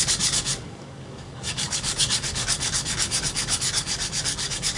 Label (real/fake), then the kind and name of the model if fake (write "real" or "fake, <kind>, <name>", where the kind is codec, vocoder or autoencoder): fake, codec, DAC